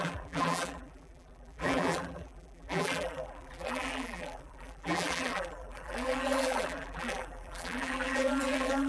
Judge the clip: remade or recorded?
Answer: remade